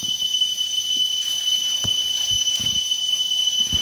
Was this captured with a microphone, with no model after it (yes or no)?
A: no